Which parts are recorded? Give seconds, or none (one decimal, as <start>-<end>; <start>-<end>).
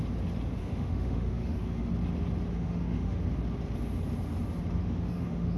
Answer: 0.0-0.6; 1.9-2.5; 3.2-4.8